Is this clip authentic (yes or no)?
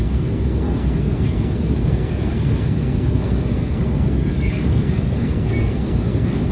no